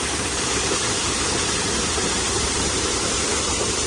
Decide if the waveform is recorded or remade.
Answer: remade